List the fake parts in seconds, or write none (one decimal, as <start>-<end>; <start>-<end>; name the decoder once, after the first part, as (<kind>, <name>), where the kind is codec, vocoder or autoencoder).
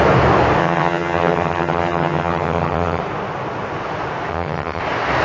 0.6-3.0 (vocoder, HiFi-GAN); 4.3-4.8